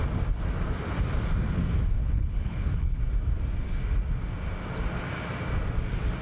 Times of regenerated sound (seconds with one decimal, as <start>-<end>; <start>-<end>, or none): 2.0-3.0